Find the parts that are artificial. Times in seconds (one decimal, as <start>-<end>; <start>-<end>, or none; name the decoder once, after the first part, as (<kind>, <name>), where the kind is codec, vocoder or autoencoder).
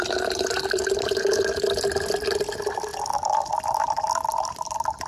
0.0-5.1 (vocoder, BigVGAN v2)